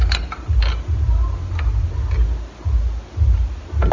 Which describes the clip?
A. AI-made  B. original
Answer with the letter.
B